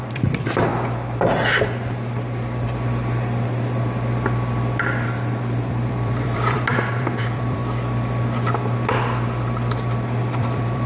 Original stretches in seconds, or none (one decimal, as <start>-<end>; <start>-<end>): 0.7-5.6; 7.6-10.4